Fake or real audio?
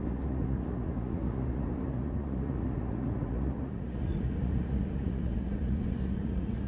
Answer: fake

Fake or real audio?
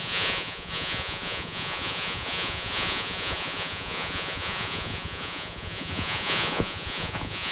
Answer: fake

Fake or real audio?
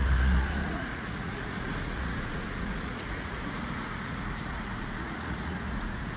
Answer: fake